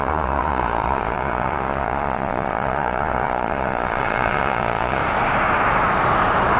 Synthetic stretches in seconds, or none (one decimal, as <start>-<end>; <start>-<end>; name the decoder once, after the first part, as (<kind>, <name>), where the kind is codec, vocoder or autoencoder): 0.0-5.0 (vocoder, Vocos)